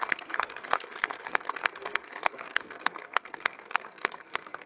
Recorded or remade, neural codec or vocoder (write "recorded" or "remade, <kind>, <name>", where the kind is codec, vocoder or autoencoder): remade, codec, SNAC